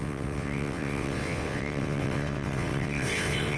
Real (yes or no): no